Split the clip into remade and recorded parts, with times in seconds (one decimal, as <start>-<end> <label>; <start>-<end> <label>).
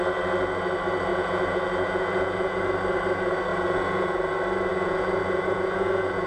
0.0-1.1 recorded; 1.1-2.6 remade; 2.6-3.5 recorded; 3.5-4.3 remade; 4.3-4.7 recorded; 4.7-6.3 remade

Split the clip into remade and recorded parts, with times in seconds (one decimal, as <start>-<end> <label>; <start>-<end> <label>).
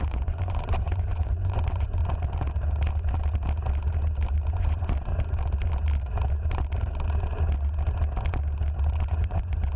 0.0-2.0 remade; 2.0-4.5 recorded; 4.5-5.1 remade; 5.1-9.1 recorded; 9.1-9.8 remade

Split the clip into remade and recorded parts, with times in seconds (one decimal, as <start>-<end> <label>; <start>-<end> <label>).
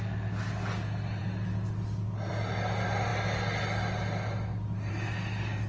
0.0-5.7 recorded